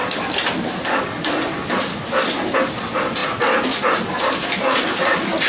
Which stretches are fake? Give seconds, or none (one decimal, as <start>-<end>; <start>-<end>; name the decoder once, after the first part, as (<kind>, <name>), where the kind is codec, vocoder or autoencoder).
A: none

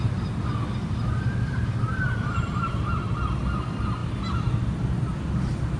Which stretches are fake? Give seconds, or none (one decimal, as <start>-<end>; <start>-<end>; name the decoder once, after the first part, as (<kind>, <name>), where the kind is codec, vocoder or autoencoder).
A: none